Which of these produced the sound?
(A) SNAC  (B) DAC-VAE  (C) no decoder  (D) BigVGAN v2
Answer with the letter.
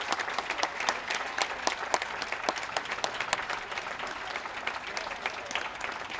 C